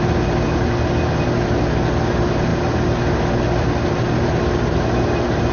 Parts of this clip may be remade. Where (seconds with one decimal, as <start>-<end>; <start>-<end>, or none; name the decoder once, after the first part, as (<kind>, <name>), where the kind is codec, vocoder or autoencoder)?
none